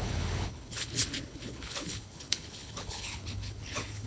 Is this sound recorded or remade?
remade